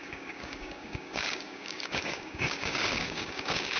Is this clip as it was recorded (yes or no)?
no